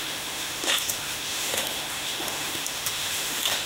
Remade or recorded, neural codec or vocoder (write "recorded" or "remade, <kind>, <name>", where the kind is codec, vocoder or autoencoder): remade, autoencoder, DAC-VAE